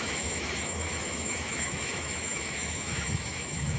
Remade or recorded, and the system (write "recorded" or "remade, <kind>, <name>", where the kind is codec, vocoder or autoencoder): remade, autoencoder, DAC-VAE